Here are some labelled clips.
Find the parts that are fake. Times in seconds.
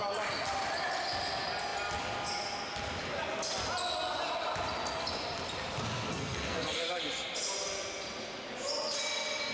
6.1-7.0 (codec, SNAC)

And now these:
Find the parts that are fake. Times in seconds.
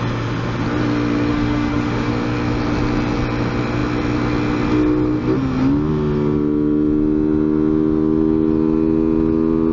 1.3-2.1 (autoencoder, DAC-VAE)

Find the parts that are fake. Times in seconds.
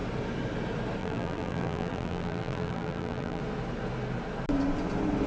1.0-3.4 (vocoder, BigVGAN v2)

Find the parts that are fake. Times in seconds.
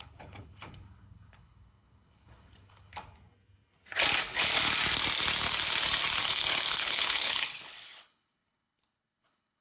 0.0-2.9 (codec, HILCodec); 6.2-9.6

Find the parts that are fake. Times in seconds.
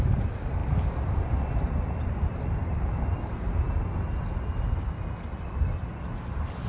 none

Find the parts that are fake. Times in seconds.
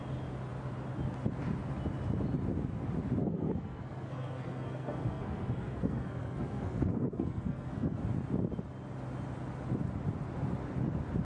3.2-8.0 (codec, SNAC)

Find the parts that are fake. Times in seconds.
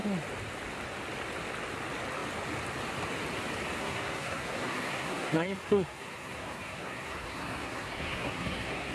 3.8-8.9 (codec, SNAC)